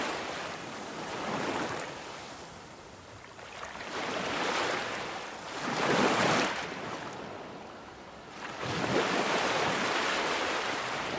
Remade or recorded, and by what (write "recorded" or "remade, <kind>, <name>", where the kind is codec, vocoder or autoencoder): recorded